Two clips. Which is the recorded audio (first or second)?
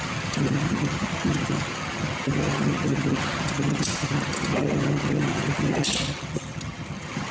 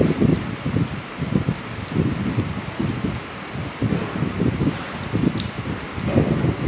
second